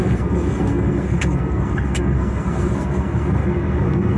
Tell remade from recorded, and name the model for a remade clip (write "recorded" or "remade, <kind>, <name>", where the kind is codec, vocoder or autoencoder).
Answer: remade, codec, SNAC